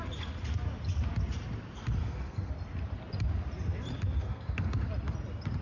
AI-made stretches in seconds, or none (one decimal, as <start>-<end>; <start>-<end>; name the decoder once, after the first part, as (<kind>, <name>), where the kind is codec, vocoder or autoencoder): 2.0-2.5 (codec, SNAC); 4.2-4.9